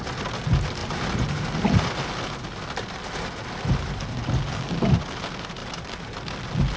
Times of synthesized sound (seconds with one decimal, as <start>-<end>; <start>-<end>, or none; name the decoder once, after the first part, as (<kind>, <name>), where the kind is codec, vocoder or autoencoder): none